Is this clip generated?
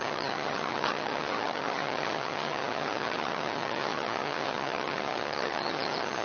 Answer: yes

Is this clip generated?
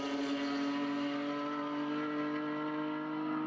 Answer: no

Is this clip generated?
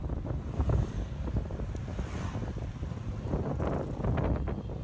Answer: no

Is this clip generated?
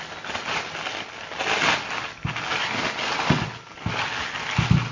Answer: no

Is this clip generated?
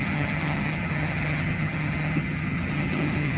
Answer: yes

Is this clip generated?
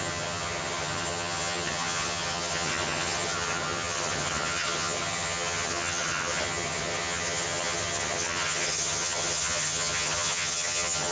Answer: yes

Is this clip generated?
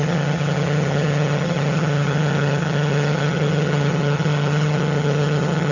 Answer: yes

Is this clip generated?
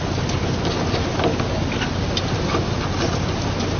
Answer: no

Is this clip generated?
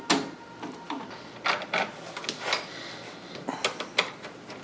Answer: no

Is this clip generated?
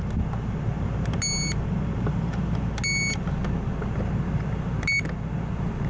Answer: no